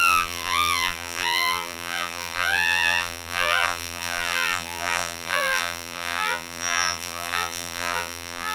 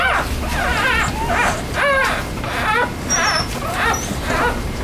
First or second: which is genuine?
second